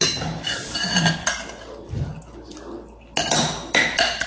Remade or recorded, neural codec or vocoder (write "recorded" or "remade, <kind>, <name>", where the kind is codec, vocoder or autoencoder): recorded